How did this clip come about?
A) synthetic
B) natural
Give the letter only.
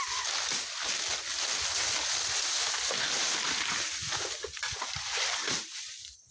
B